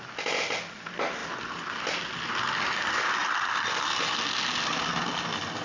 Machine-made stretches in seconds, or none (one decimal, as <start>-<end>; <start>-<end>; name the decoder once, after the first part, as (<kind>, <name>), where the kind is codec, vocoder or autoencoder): none